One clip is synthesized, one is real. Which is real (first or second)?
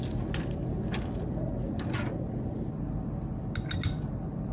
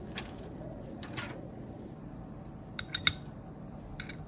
first